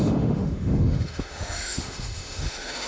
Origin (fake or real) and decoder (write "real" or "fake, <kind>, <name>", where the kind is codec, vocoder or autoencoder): fake, autoencoder, DAC-VAE